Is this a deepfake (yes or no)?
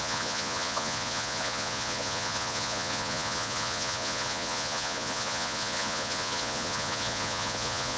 yes